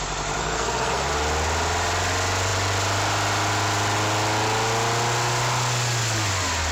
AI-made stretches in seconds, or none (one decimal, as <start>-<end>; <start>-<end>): 0.4-1.1